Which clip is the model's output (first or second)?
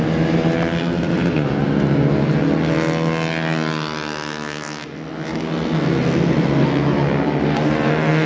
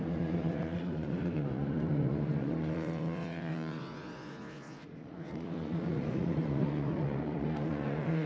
second